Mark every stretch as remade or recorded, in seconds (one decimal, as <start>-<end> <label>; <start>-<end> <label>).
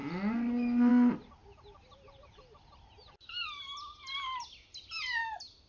0.0-5.7 recorded